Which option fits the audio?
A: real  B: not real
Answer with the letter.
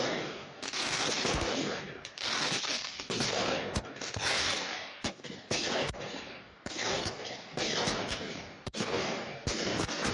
B